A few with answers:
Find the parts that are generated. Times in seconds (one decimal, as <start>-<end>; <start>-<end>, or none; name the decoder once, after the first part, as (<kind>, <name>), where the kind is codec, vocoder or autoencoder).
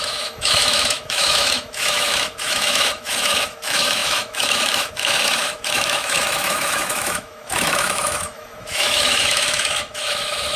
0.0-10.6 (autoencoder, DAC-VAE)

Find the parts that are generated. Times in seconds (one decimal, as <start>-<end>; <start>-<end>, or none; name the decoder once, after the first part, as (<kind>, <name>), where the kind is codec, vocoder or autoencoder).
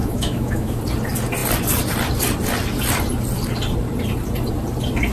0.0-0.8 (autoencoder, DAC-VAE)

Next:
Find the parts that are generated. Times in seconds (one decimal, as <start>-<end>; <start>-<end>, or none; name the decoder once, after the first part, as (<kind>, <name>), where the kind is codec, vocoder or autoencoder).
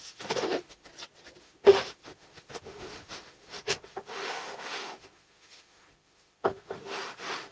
0.0-0.9 (autoencoder, DAC-VAE); 1.4-7.5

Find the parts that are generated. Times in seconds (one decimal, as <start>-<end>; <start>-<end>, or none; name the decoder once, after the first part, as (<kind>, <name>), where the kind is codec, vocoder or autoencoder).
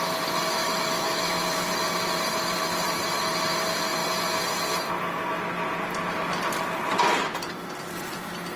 0.6-1.7 (autoencoder, DAC-VAE)